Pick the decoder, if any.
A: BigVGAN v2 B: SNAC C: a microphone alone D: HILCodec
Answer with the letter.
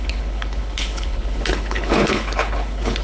D